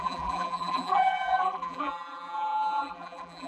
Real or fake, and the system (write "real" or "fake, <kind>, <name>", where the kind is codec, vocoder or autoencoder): fake, vocoder, BigVGAN v2